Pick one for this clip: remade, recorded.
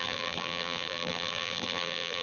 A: remade